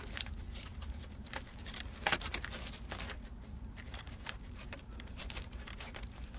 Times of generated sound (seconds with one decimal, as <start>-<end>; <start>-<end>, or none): 0.0-2.3; 3.6-6.4